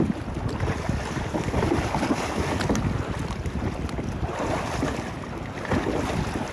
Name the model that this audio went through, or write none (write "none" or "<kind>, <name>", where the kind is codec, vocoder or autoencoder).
none